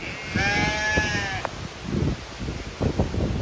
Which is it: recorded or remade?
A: recorded